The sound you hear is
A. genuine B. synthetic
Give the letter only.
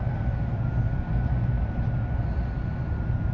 A